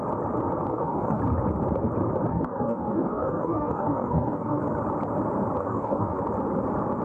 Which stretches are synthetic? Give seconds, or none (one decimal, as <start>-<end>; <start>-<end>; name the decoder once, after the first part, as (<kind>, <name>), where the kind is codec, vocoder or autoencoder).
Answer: 0.7-1.2 (codec, DAC); 2.3-4.6; 5.6-6.2